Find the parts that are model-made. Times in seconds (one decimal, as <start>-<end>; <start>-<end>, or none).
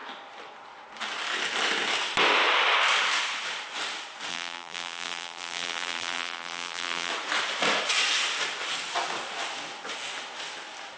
4.3-7.1